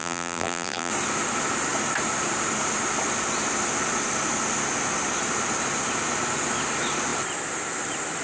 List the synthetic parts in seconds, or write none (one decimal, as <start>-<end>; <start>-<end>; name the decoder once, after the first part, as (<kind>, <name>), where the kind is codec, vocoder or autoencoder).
0.0-0.9 (vocoder, BigVGAN v2)